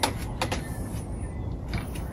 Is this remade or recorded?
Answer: recorded